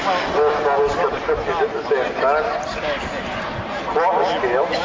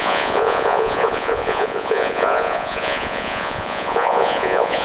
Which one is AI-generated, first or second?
second